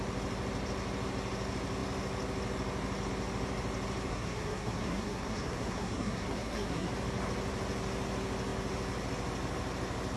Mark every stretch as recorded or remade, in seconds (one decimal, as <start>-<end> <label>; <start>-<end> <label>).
0.0-4.1 recorded; 4.1-6.9 remade; 6.9-10.2 recorded